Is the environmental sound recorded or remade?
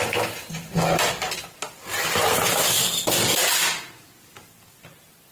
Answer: recorded